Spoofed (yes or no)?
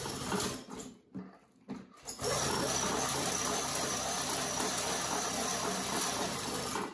no